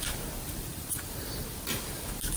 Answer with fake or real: fake